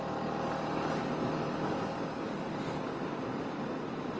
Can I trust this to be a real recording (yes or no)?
yes